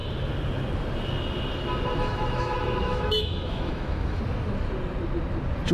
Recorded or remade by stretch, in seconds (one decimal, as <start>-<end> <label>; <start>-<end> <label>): 0.0-1.9 recorded; 1.9-4.2 remade; 4.2-5.7 recorded